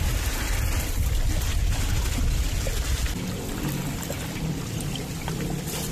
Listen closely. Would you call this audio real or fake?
real